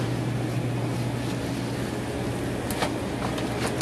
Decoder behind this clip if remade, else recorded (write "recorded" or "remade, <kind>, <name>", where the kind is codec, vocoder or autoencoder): recorded